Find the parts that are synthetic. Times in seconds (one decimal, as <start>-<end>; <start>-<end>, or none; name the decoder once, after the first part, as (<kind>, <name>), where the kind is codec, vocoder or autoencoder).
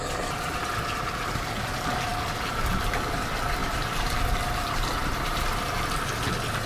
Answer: 3.6-5.4 (vocoder, BigVGAN v2)